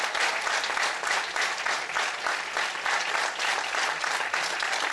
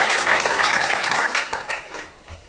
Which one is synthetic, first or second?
second